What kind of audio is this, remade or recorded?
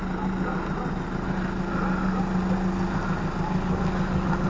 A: recorded